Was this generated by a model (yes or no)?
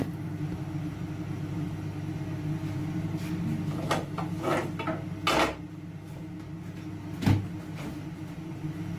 no